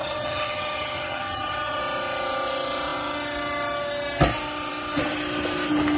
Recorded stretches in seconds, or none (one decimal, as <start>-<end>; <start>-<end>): 1.8-6.0